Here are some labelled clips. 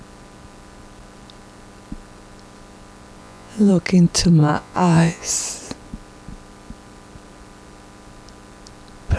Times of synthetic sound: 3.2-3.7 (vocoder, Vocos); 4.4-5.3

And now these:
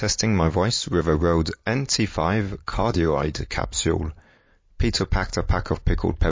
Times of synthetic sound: 2.7-3.8 (vocoder, Vocos)

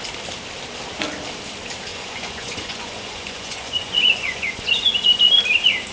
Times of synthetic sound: 1.9-5.3 (vocoder, Vocos)

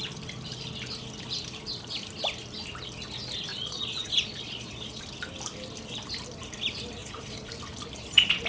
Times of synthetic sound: 3.5-5.0 (vocoder, Vocos); 7.0-7.5

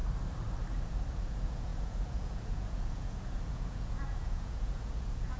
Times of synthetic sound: 1.1-5.4 (vocoder, Vocos)

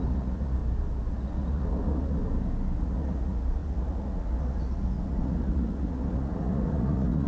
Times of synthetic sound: 0.0-0.6 (vocoder, Vocos); 1.1-2.2; 2.8-7.3

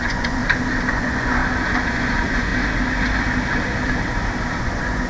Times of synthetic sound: 0.0-0.4 (vocoder, Vocos); 0.9-1.4; 1.9-2.5; 4.6-5.1